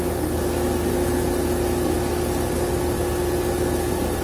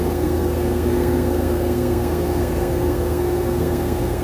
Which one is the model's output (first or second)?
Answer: second